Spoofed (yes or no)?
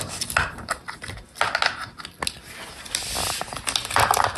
no